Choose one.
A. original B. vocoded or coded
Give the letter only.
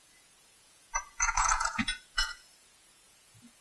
B